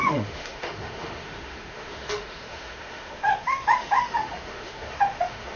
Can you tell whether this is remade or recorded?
remade